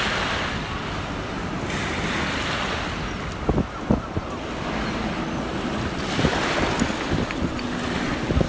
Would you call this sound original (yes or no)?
yes